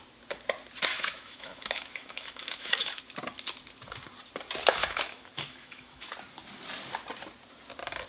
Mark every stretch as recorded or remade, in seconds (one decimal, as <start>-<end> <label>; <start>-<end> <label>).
0.0-0.9 recorded; 0.9-3.0 remade; 3.0-4.8 recorded; 4.8-6.1 remade; 6.1-8.1 recorded